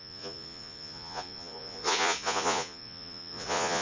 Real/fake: fake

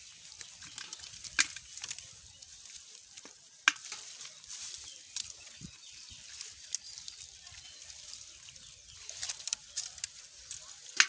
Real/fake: real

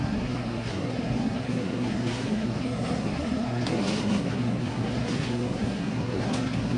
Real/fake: fake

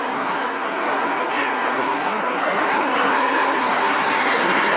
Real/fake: fake